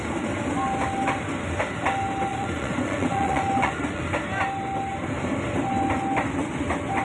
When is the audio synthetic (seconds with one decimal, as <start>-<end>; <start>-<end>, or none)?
2.3-4.0